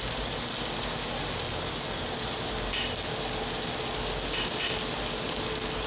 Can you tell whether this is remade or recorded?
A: recorded